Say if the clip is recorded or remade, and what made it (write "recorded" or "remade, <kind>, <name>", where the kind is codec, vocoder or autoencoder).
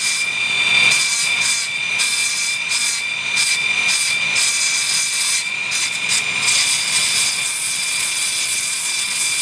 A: remade, vocoder, Vocos